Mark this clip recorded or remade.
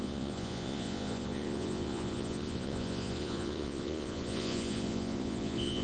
remade